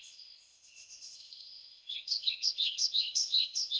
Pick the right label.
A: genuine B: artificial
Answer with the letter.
B